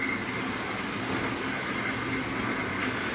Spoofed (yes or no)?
no